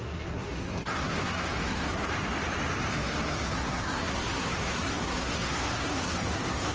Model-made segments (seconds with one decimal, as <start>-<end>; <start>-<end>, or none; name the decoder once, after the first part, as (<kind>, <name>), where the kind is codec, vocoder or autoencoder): 0.0-2.1 (codec, SNAC); 2.9-6.7